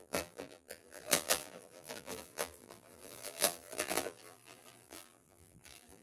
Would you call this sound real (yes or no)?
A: no